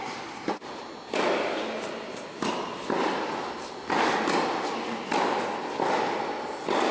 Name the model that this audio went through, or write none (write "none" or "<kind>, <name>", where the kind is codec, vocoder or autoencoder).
none